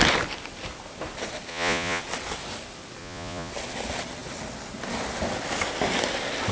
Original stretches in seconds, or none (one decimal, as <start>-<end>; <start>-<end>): 0.0-1.5; 2.0-3.0; 3.5-6.5